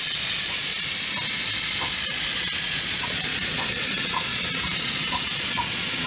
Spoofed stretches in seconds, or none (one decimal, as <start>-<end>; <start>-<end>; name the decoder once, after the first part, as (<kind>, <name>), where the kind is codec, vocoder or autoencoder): 0.0-0.7 (vocoder, Vocos); 1.6-6.1